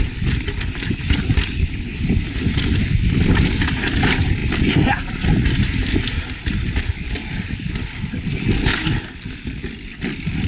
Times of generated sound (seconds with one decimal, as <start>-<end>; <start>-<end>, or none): none